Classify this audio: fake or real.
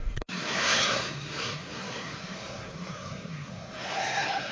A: fake